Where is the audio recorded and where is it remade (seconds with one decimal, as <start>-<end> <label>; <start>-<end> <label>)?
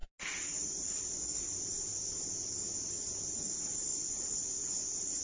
0.0-5.2 recorded